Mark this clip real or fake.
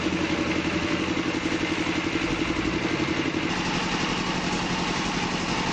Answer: real